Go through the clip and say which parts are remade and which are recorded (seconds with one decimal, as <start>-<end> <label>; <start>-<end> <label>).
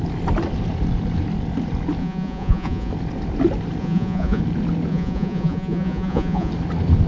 0.0-2.0 recorded; 2.0-2.9 remade; 2.9-3.8 recorded; 3.8-4.4 remade; 4.4-4.9 recorded; 4.9-6.5 remade; 6.5-7.1 recorded